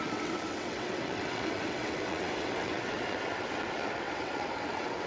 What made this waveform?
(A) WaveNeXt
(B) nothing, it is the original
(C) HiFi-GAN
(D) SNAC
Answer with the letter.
A